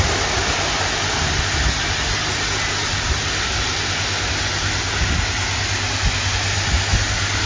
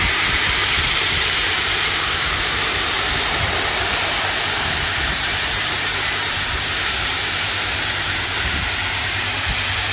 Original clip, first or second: first